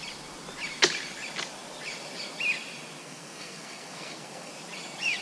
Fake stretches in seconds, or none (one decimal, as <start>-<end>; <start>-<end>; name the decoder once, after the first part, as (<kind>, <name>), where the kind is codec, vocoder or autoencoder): 3.0-4.5 (codec, SNAC)